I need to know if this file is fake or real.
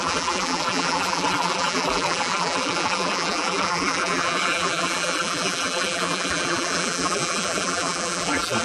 fake